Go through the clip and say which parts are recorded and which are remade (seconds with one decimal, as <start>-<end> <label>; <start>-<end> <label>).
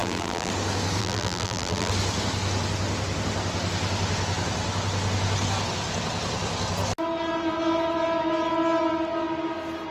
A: 0.0-0.5 remade; 0.5-1.0 recorded; 1.0-1.9 remade; 1.9-9.9 recorded